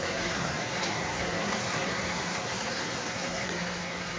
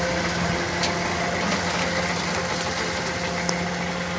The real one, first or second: second